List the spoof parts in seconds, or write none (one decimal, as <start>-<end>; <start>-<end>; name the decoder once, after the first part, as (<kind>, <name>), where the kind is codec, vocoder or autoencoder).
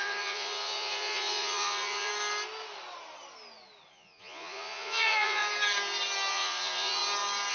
0.0-2.1 (vocoder, Vocos); 3.9-5.4; 6.3-7.0